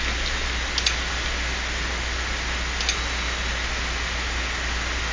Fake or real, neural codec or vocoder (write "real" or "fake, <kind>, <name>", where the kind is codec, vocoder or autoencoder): real